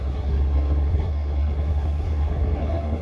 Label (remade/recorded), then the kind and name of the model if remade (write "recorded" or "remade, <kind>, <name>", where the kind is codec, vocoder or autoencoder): remade, codec, SNAC